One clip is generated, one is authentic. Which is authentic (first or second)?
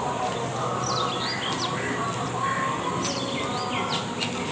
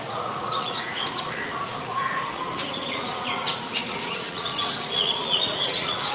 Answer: first